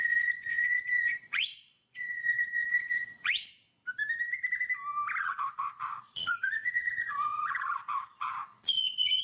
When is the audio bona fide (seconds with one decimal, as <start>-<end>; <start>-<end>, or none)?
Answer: 3.5-5.2